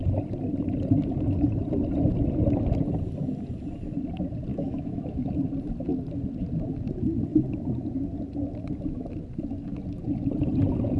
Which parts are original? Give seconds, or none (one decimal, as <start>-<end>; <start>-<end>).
0.0-4.5; 5.3-11.0